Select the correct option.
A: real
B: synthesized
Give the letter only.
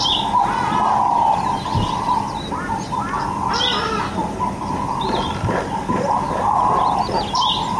A